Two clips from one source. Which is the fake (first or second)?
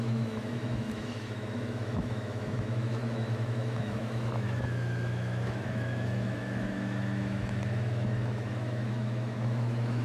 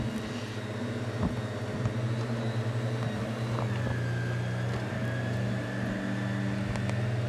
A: first